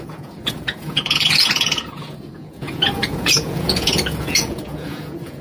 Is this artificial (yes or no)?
yes